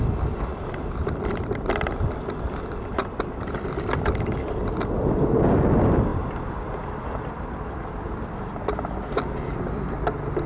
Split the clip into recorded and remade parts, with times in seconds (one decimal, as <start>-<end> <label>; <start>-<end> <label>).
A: 0.0-0.5 recorded; 0.5-5.1 remade; 5.1-10.5 recorded